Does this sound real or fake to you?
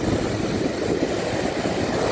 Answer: real